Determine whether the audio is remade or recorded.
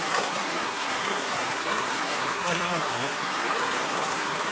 remade